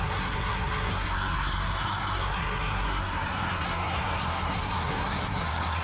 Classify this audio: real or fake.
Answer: fake